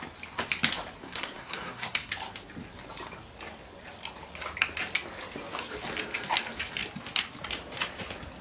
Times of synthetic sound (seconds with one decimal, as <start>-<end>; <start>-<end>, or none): 1.0-2.1